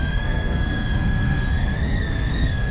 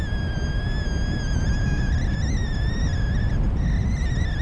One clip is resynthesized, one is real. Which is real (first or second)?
second